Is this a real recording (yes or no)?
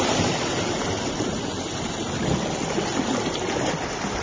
yes